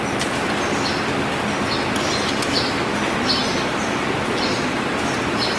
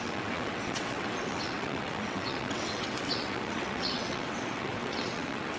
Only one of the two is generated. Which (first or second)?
second